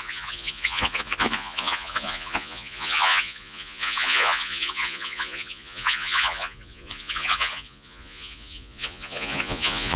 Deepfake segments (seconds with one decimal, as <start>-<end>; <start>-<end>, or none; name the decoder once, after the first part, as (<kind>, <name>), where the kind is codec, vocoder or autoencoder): 0.0-10.0 (vocoder, Vocos)